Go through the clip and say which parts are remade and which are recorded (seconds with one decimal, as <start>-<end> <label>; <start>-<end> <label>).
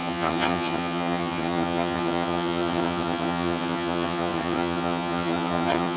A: 0.0-6.0 remade